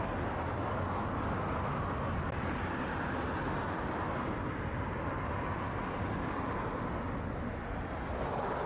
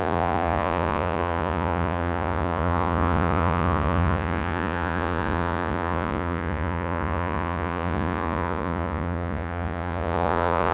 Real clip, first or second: first